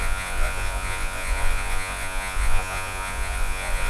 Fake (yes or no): yes